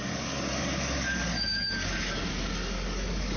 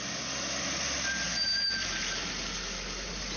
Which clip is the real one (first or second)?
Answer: second